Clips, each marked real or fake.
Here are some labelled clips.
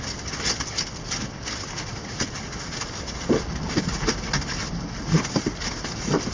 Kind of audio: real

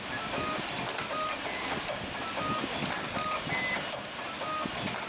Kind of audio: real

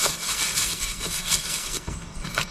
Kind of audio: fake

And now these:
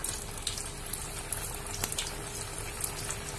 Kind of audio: real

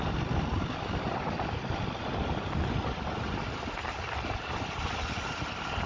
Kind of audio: real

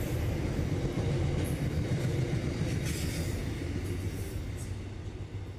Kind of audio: real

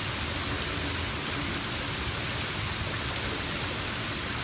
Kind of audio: real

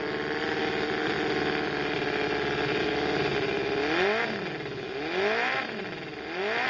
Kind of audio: real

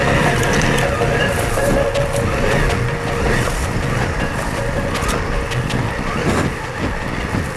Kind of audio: real